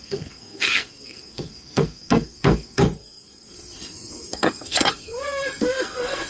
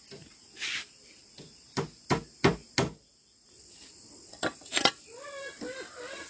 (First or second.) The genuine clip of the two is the second